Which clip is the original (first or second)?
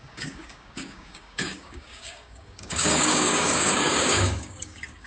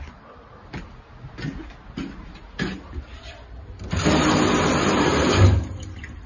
second